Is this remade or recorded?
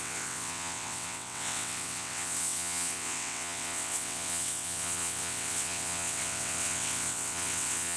remade